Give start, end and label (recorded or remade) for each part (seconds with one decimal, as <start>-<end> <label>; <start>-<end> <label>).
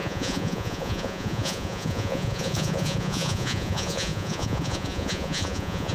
0.0-5.9 remade